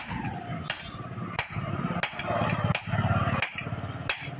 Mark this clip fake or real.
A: real